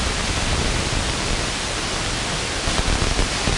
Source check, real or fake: real